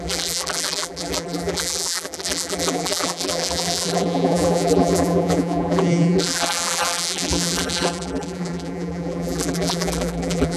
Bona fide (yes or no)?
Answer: no